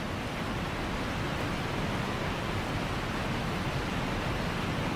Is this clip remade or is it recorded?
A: recorded